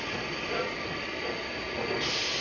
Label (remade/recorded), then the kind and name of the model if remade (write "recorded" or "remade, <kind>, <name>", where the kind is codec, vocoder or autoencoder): recorded